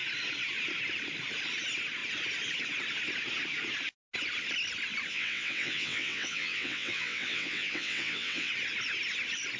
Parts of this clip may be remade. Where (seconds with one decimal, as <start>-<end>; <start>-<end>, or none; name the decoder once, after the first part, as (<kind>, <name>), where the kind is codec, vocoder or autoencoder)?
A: 5.1-8.5 (vocoder, WaveNeXt)